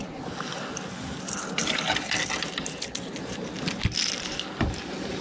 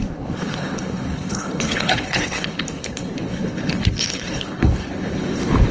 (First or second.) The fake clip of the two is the second